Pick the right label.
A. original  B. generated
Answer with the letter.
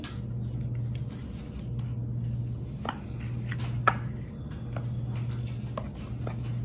A